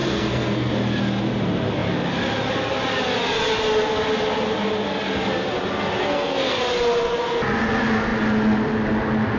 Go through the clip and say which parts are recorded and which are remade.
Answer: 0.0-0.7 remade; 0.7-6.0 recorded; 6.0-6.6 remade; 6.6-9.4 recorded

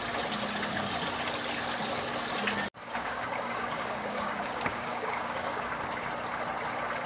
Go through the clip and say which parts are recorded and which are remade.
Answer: 0.0-2.8 recorded; 2.8-5.7 remade; 5.7-7.1 recorded

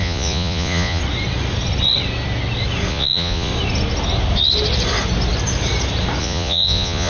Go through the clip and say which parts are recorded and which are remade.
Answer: 0.0-1.0 remade; 1.0-2.9 recorded; 2.9-3.5 remade; 3.5-6.2 recorded; 6.2-7.1 remade